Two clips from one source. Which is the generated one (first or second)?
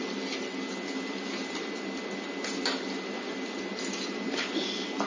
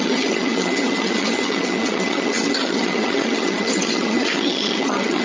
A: second